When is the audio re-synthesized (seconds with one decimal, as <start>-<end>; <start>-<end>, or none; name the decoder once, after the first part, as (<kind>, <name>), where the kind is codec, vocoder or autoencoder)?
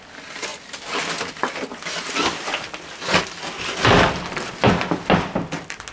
none